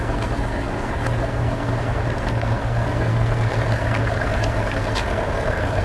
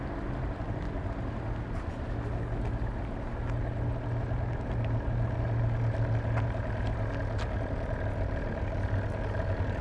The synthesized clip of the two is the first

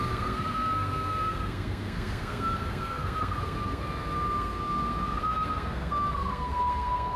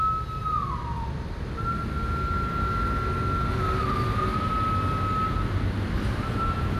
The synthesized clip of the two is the first